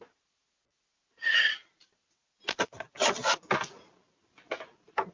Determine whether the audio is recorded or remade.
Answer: recorded